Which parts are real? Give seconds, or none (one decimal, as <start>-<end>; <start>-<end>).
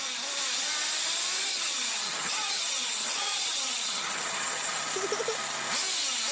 0.0-1.5; 4.8-6.3